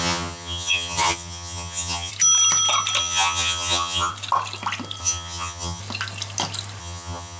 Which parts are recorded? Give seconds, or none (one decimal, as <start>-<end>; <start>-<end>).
2.1-3.0; 4.1-5.0; 5.8-6.8